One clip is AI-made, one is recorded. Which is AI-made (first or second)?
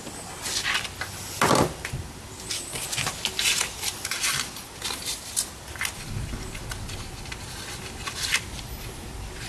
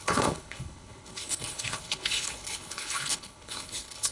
second